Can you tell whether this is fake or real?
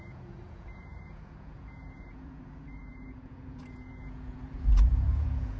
fake